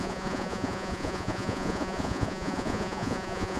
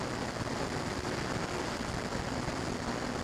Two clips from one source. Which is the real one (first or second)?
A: second